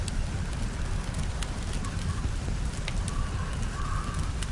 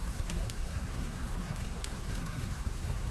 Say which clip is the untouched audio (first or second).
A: first